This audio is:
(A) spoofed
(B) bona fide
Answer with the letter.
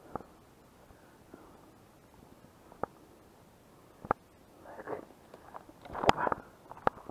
B